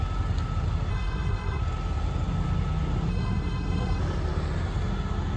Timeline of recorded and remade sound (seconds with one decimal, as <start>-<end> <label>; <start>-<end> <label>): 0.0-0.9 recorded; 0.9-1.6 remade; 1.6-3.1 recorded; 3.1-4.0 remade; 4.0-5.4 recorded